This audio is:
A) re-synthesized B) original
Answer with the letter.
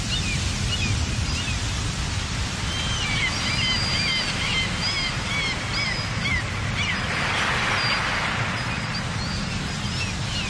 B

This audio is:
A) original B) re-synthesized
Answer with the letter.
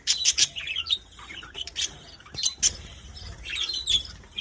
B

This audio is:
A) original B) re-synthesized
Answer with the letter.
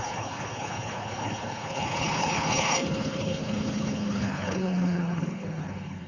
B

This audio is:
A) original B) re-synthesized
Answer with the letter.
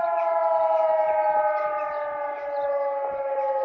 A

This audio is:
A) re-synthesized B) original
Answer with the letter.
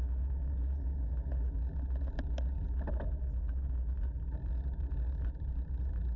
B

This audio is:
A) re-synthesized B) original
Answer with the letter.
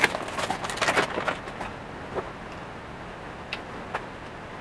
B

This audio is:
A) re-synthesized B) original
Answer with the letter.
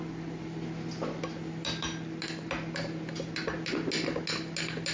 B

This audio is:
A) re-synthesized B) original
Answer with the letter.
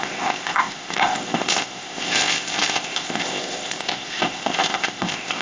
A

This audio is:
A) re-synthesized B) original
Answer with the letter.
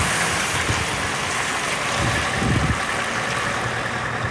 B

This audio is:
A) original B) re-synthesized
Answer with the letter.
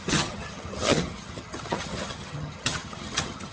B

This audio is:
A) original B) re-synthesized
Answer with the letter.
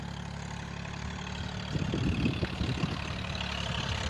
A